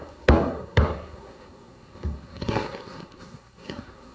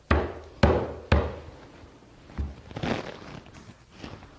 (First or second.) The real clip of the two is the second